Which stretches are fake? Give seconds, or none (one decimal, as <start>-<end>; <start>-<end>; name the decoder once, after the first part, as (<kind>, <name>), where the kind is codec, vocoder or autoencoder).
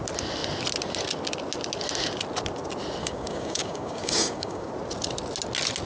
3.0-4.7 (codec, DAC)